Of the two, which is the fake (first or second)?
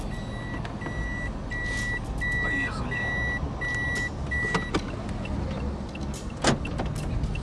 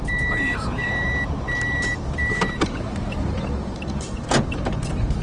second